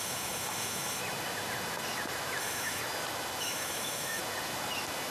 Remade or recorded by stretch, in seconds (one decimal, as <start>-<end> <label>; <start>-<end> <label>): 0.0-1.0 remade; 1.0-2.4 recorded; 2.4-2.8 remade; 2.8-3.4 recorded; 3.4-4.2 remade; 4.2-5.1 recorded